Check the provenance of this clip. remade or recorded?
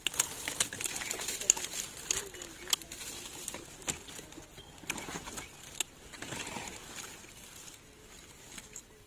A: recorded